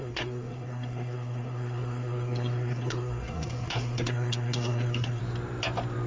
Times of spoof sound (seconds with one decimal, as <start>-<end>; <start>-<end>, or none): 0.0-5.2